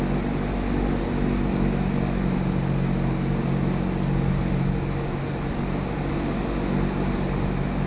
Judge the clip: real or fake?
real